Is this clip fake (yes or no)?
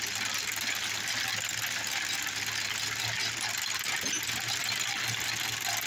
no